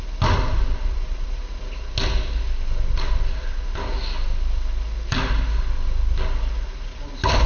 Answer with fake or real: real